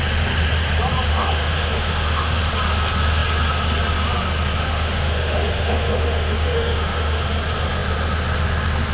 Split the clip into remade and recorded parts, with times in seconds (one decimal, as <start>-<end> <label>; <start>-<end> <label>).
0.0-1.1 recorded; 1.1-2.4 remade; 2.4-4.6 recorded; 4.6-7.2 remade; 7.2-8.9 recorded